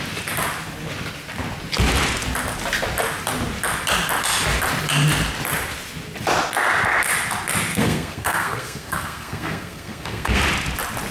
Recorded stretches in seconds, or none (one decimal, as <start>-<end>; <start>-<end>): 0.0-7.7; 10.4-11.1